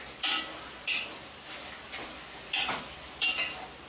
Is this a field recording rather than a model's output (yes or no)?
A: yes